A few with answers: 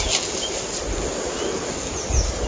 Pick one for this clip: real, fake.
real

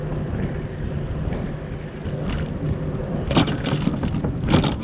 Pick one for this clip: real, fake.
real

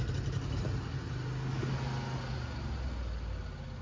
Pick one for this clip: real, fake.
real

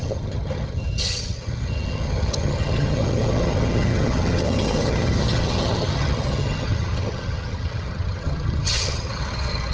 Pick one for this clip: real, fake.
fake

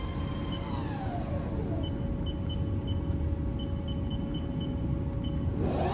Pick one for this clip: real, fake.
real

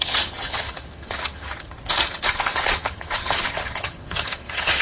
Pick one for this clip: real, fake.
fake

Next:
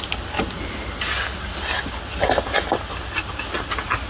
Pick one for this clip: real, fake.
real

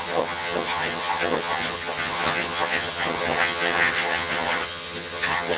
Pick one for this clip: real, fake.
fake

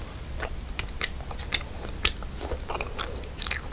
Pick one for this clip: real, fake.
real